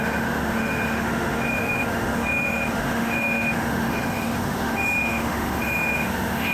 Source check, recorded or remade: remade